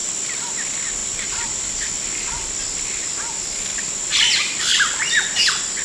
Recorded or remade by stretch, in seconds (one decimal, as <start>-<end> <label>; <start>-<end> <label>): 0.0-0.5 remade; 0.5-1.0 recorded; 1.0-2.5 remade; 2.5-5.8 recorded